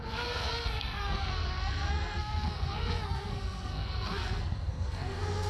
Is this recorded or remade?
remade